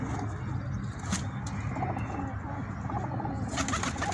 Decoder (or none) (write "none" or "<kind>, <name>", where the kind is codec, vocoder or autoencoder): none